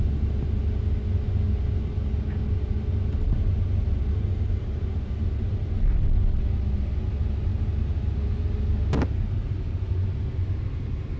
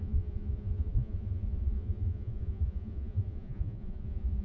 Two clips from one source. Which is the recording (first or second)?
first